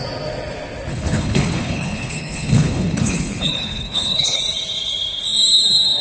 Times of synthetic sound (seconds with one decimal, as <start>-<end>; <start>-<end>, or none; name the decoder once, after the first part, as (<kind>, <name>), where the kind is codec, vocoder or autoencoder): 0.9-4.4 (codec, HILCodec)